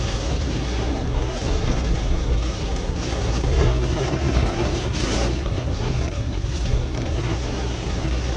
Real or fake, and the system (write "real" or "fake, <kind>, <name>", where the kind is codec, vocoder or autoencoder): fake, codec, SNAC